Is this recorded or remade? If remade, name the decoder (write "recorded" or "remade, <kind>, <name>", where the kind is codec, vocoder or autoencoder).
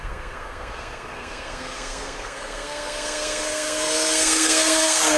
remade, codec, SNAC